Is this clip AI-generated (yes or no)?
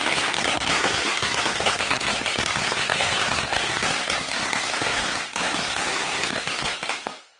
yes